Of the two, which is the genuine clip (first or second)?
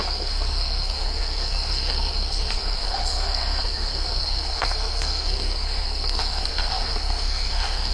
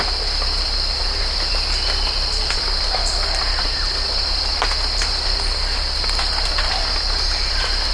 second